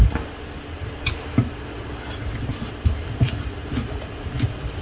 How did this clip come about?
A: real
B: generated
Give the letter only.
A